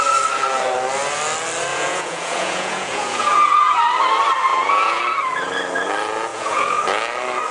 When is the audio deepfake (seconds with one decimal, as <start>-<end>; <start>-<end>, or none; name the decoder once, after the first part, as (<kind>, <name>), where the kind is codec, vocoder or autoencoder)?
1.7-3.8 (vocoder, Vocos); 4.5-5.0; 6.3-6.8

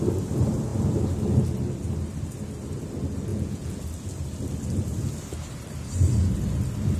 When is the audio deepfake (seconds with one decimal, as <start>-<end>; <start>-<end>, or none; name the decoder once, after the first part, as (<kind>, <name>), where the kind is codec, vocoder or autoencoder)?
3.3-3.8 (vocoder, Vocos)

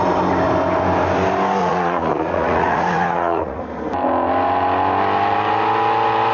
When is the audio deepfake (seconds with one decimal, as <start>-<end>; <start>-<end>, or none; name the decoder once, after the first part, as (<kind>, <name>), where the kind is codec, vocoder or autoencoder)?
1.6-3.6 (vocoder, Vocos)